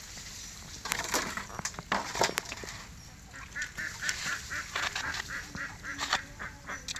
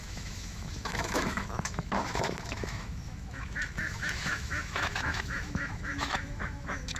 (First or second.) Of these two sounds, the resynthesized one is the second